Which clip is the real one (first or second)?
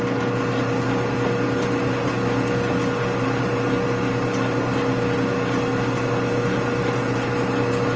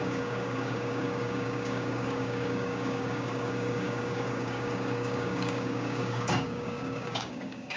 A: first